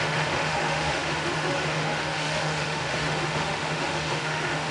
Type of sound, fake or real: fake